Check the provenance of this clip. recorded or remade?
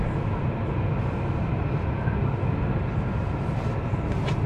recorded